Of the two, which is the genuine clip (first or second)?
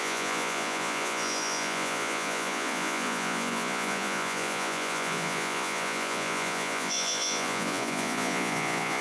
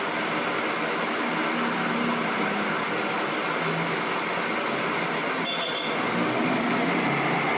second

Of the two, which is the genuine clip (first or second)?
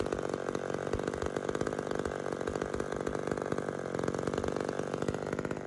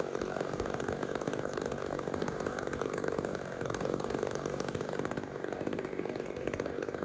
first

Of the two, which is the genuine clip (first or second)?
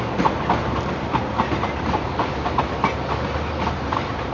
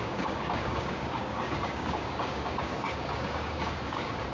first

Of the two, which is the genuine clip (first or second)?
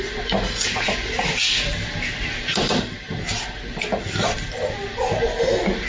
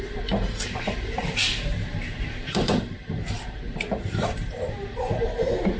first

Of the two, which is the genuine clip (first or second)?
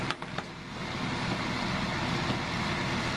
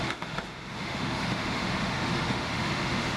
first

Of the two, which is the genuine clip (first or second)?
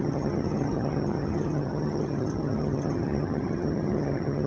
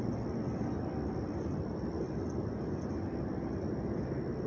second